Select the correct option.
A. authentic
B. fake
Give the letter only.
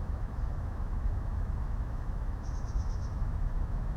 B